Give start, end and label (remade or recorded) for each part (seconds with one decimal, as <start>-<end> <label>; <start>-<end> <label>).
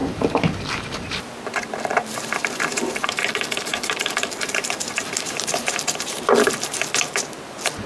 0.0-1.2 remade; 1.2-1.9 recorded; 1.9-3.3 remade; 3.3-3.7 recorded; 3.7-6.8 remade; 6.8-7.9 recorded